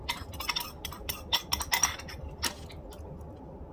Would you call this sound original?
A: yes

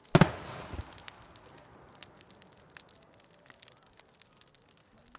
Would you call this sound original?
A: yes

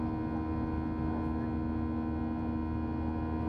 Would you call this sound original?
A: yes